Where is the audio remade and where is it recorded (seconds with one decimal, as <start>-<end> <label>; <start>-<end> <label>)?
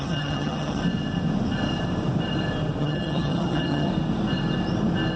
0.0-0.8 remade; 0.8-2.8 recorded; 2.8-3.9 remade; 3.9-5.2 recorded